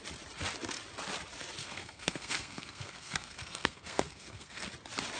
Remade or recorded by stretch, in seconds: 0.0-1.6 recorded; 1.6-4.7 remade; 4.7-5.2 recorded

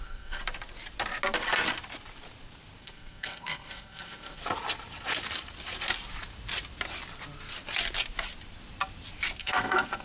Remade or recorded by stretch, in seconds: 0.0-0.4 remade; 0.4-2.8 recorded; 2.8-4.4 remade; 4.4-9.4 recorded; 9.4-10.0 remade

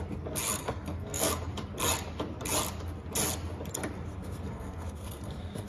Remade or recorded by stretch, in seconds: 0.0-0.6 recorded; 0.6-1.3 remade; 1.3-4.1 recorded; 4.1-5.7 remade

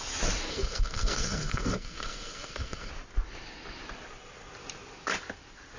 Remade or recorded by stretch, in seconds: 0.0-0.5 recorded; 0.5-2.9 remade; 2.9-5.8 recorded

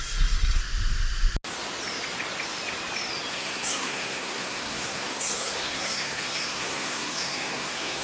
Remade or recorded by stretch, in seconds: 0.0-0.6 remade; 0.6-3.3 recorded; 3.3-8.0 remade

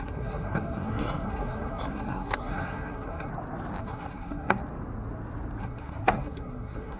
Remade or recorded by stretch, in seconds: 0.0-3.3 remade; 3.3-3.8 recorded; 3.8-4.6 remade; 4.6-5.6 recorded; 5.6-7.0 remade

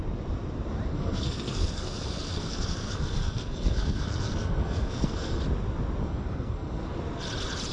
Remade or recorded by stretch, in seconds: 0.0-0.9 recorded; 0.9-5.4 remade; 5.4-6.0 recorded; 6.0-7.0 remade; 7.0-7.7 recorded